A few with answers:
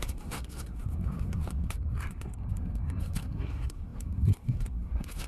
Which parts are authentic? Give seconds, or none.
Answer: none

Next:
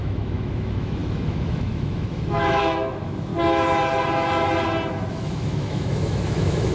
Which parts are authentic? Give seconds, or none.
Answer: 3.3-5.1

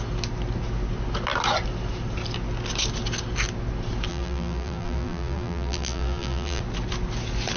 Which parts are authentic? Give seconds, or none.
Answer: 0.0-4.1; 6.6-7.6

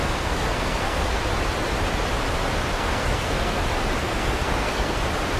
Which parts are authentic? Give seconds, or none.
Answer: 1.2-2.7; 3.6-4.0; 5.0-5.4

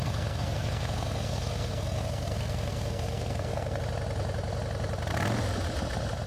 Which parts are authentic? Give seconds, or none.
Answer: 3.8-6.3

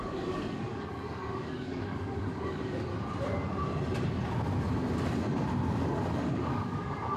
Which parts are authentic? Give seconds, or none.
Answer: 2.9-5.7